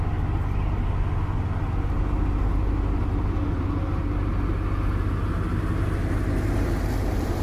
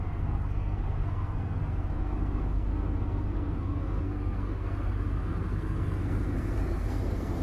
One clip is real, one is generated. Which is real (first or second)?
first